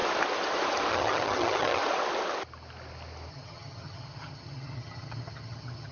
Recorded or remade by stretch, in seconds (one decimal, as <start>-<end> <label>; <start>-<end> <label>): 0.0-0.9 recorded; 0.9-1.8 remade; 1.8-3.3 recorded; 3.3-5.9 remade